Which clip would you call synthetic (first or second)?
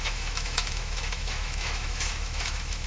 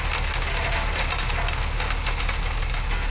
first